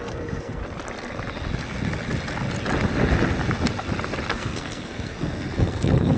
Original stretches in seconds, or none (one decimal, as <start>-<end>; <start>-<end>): 0.6-4.3